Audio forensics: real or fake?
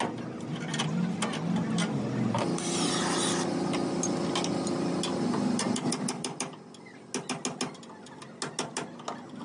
real